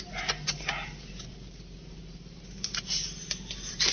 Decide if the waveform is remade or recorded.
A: recorded